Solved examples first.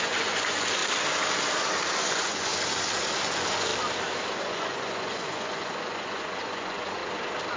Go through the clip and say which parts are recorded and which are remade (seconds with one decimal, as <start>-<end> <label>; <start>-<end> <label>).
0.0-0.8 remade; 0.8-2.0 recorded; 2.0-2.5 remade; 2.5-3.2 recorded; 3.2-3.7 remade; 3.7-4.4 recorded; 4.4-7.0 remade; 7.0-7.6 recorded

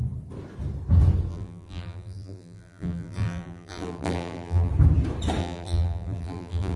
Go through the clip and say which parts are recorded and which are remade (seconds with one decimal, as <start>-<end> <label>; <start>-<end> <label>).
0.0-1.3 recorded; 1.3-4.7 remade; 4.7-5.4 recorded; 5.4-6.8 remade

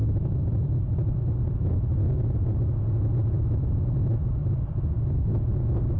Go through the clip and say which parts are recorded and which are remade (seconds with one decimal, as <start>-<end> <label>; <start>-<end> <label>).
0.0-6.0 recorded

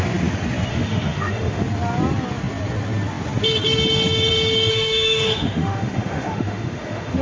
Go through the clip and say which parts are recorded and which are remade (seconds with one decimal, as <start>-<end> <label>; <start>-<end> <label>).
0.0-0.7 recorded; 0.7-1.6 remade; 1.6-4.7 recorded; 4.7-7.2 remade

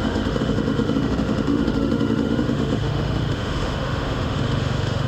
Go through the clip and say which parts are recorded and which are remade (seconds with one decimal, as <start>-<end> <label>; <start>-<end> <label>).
0.0-5.1 remade

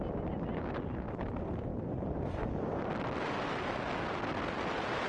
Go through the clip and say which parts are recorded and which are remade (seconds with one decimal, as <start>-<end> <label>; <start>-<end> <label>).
0.0-5.1 recorded

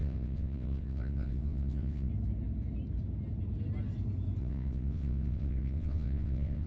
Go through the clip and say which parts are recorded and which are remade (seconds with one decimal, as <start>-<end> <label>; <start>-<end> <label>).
0.0-2.1 remade; 2.1-4.4 recorded; 4.4-6.7 remade